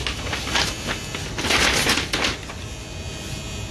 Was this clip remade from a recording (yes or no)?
no